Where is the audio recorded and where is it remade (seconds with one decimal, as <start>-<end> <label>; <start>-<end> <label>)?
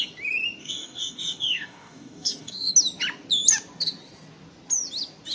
0.0-0.6 recorded; 0.6-2.7 remade; 2.7-5.3 recorded